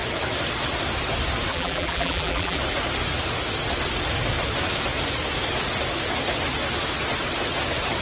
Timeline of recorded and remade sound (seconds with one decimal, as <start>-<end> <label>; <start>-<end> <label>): 0.0-1.5 recorded; 1.5-2.6 remade; 2.6-8.0 recorded